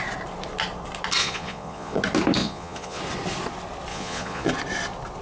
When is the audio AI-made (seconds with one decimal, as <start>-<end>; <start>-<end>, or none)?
1.2-2.0; 2.4-3.0; 3.9-4.5